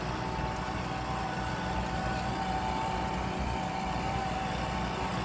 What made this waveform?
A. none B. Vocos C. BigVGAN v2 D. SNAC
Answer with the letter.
A